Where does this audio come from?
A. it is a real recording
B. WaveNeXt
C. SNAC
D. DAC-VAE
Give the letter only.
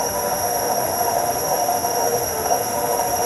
D